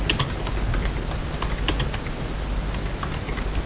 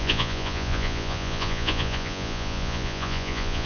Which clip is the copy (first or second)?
second